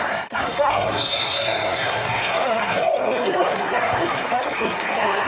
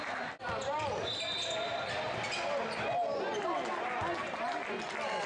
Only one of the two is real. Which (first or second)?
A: second